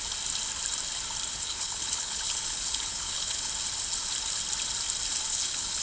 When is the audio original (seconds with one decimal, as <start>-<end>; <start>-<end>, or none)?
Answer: 0.0-1.3; 3.5-5.3

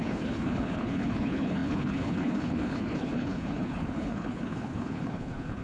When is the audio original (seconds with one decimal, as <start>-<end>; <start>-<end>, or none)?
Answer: none

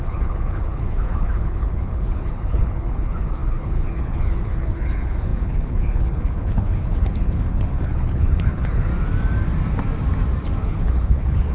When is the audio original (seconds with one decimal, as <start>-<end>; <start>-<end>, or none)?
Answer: 8.9-10.6

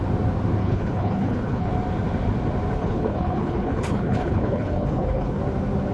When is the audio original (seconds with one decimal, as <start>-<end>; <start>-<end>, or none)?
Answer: 0.0-0.6; 1.7-2.8; 5.4-5.9

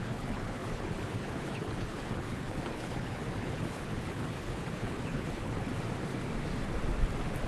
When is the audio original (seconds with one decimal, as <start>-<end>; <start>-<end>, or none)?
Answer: 5.7-7.5